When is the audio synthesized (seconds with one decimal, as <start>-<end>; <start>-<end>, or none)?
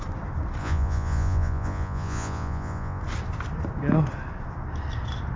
0.6-3.0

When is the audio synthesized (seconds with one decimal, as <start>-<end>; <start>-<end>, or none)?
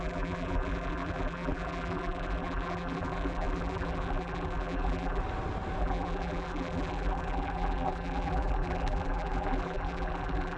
0.0-5.2; 5.8-10.6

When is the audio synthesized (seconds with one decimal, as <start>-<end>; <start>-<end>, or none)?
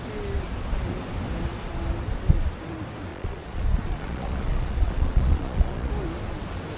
3.1-5.9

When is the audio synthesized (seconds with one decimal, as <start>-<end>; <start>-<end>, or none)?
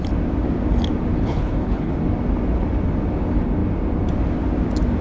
1.2-1.9